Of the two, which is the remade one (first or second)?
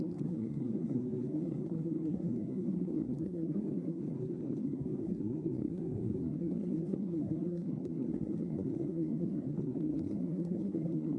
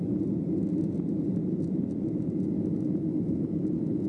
first